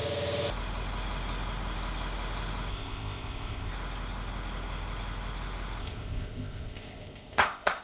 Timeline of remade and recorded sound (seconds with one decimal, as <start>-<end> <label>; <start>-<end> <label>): 0.0-2.7 recorded; 2.7-3.7 remade; 3.7-5.8 recorded; 5.8-7.8 remade